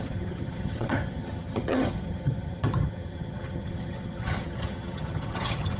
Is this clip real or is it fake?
fake